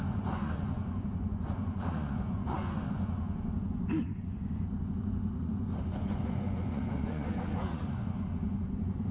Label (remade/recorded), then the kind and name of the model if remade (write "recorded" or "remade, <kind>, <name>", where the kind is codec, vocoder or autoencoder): remade, vocoder, Vocos